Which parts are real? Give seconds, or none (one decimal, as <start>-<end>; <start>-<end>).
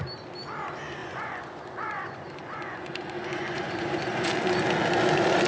0.0-1.0; 4.3-5.5